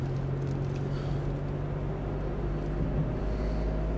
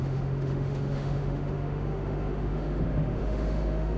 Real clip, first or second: first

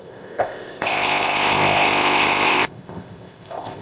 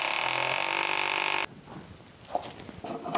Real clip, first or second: second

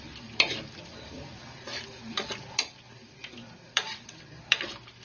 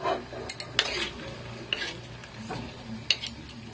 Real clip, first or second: second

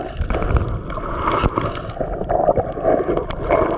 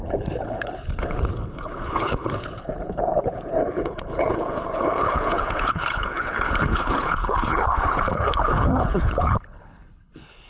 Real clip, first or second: first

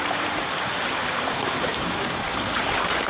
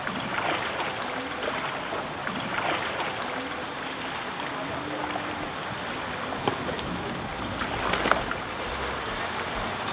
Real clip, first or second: second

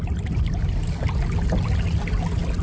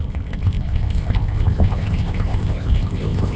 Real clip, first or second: first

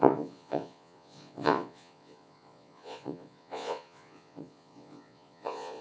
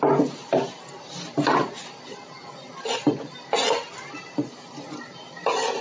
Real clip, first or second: second